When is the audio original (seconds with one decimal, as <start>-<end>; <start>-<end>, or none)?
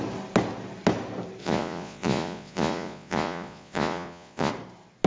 0.0-1.4; 4.5-5.1